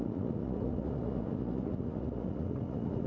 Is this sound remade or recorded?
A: remade